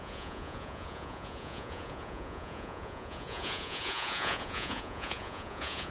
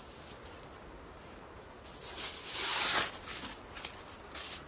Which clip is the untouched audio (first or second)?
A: second